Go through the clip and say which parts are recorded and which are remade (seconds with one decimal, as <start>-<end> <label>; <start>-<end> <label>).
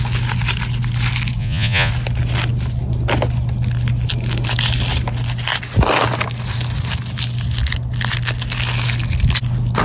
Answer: 0.0-1.4 recorded; 1.4-1.9 remade; 1.9-9.8 recorded